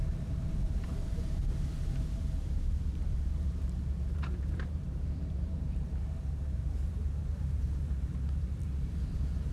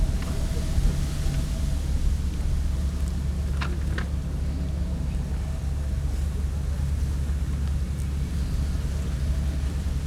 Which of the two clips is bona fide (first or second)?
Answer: second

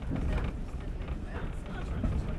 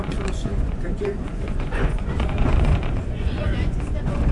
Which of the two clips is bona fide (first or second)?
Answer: first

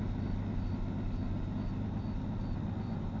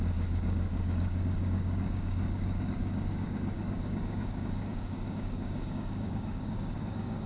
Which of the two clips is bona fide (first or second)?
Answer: first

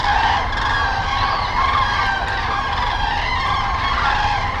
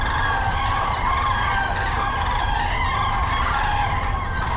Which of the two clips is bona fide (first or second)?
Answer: first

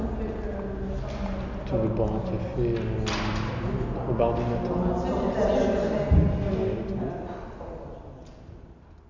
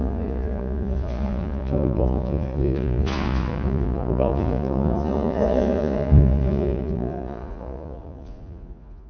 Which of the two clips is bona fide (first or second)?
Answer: first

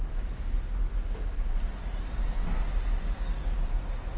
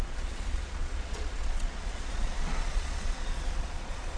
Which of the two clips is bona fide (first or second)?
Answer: first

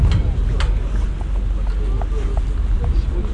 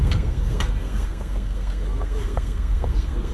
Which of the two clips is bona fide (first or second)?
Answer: first